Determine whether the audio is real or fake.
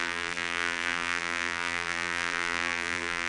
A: fake